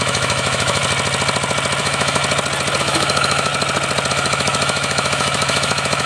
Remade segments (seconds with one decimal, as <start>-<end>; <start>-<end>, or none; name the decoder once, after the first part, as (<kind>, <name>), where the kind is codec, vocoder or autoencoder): 0.0-0.8 (autoencoder, DAC-VAE); 1.8-2.2; 2.8-3.5; 4.1-6.1